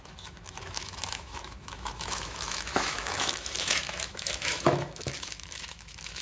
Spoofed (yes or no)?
yes